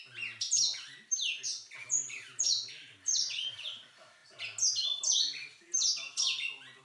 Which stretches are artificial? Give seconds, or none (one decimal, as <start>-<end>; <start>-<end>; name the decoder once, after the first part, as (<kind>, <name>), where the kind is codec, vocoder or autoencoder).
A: none

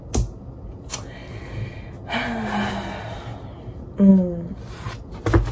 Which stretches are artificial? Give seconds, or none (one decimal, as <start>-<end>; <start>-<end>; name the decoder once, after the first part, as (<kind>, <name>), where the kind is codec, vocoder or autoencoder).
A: none

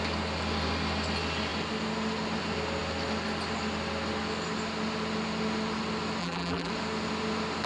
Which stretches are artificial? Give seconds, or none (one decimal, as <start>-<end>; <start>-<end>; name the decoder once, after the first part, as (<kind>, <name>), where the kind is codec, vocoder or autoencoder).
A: 6.2-6.7 (vocoder, BigVGAN v2)

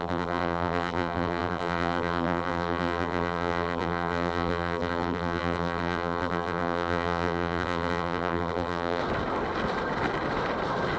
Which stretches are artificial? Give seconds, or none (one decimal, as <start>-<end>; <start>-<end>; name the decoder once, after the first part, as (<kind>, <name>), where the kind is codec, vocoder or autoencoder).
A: 0.0-9.0 (vocoder, BigVGAN v2)

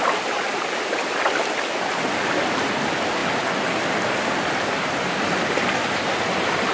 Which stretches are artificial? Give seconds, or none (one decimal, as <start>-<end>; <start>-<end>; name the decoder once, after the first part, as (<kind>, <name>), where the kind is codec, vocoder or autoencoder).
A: none

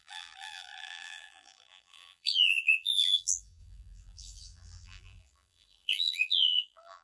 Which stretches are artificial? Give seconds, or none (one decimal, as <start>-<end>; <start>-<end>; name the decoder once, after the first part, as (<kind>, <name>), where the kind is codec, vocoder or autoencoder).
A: 0.0-7.0 (vocoder, BigVGAN v2)

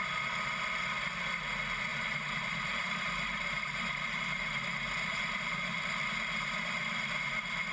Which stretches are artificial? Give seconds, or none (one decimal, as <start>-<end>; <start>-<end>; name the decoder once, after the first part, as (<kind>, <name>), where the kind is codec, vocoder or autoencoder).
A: 1.9-5.8 (vocoder, BigVGAN v2)

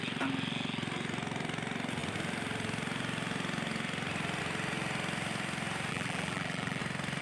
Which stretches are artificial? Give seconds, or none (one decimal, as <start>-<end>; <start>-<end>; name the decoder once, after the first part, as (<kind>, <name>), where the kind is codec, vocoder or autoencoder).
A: 5.9-6.8 (vocoder, BigVGAN v2)